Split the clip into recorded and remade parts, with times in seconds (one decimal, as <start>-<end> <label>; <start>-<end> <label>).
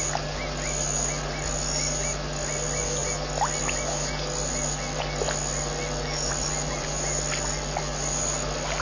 0.0-8.8 recorded